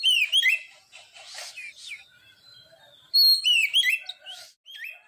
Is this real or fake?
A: real